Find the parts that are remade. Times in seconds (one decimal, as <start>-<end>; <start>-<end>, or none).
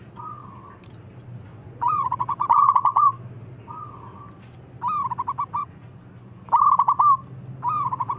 1.5-3.1; 5.6-6.4